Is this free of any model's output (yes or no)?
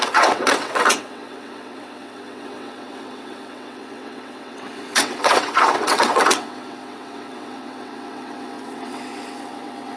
no